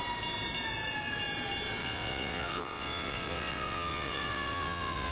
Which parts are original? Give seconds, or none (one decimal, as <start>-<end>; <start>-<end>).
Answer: 0.0-1.8